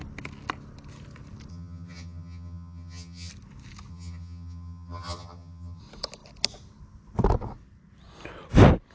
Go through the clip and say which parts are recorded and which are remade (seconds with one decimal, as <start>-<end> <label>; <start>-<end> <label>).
0.0-1.5 recorded; 1.5-3.3 remade; 3.3-3.9 recorded; 3.9-5.8 remade; 5.8-8.9 recorded